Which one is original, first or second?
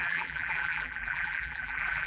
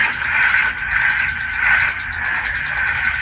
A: second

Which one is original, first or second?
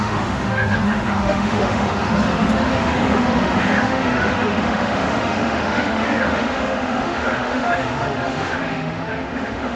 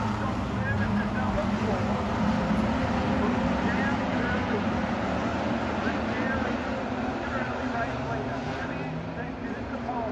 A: second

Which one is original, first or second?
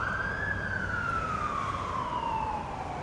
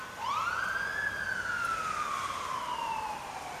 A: second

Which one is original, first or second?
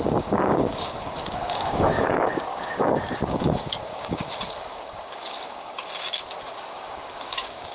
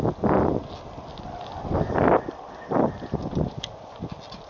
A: second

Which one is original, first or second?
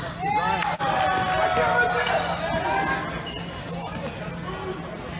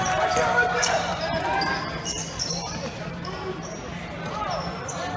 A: first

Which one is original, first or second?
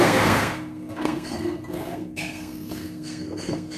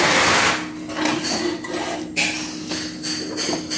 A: second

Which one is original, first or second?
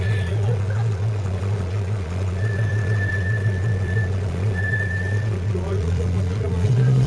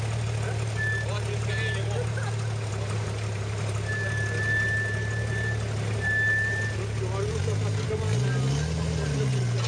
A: second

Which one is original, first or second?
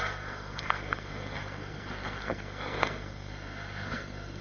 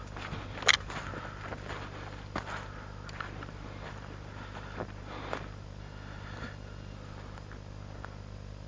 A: second